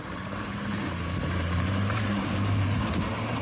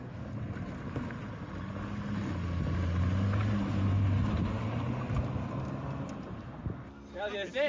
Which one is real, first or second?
second